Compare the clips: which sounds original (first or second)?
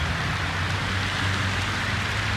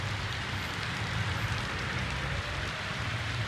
first